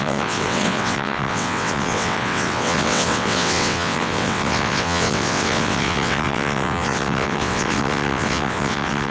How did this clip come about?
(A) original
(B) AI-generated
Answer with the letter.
B